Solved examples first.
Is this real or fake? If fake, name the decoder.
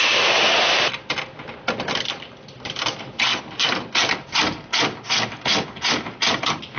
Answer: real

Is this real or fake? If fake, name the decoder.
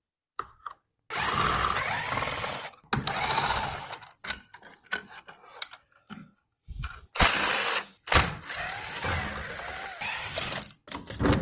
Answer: real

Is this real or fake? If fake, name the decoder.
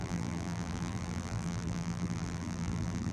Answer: fake, vocoder, BigVGAN v2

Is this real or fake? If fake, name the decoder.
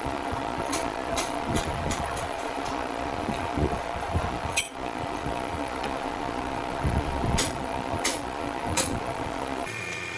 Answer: fake, vocoder, Vocos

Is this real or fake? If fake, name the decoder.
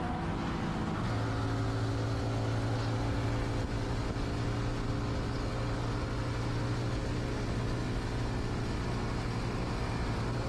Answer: real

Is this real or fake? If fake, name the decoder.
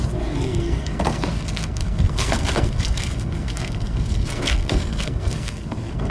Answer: fake, codec, SNAC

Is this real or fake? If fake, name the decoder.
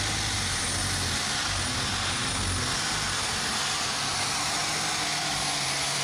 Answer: real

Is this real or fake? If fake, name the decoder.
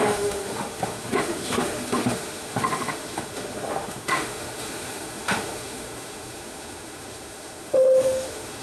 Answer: fake, autoencoder, DAC-VAE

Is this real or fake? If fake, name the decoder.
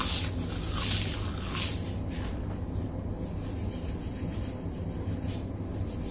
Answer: real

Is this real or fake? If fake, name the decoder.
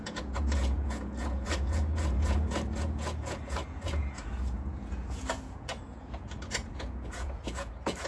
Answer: fake, vocoder, Vocos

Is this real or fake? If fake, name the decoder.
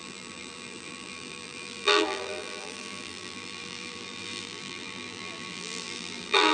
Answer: fake, vocoder, BigVGAN v2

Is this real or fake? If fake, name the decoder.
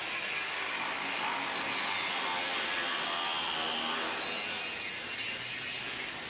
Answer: real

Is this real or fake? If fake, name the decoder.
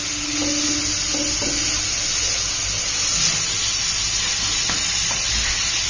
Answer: real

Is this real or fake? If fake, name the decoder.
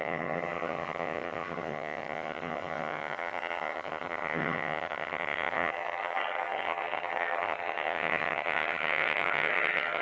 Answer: fake, vocoder, HiFi-GAN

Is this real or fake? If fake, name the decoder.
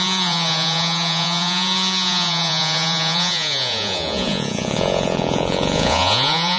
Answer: fake, vocoder, Vocos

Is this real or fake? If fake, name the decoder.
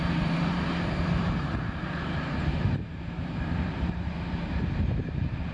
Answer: fake, vocoder, BigVGAN v2